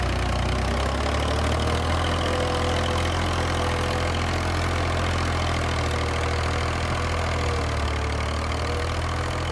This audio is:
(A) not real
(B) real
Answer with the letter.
B